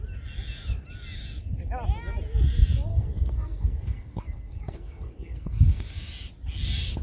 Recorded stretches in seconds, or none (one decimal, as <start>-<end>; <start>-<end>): 0.0-2.9; 5.9-7.0